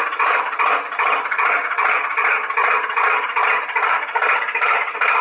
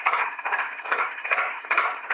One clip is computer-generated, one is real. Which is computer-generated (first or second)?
second